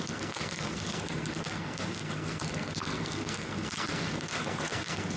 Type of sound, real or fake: fake